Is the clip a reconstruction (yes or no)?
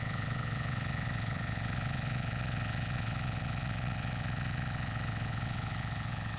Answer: yes